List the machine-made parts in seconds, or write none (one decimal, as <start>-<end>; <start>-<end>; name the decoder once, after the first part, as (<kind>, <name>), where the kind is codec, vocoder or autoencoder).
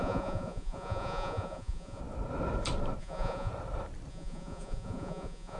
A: 0.0-2.0 (vocoder, Vocos); 3.0-3.5; 4.1-5.6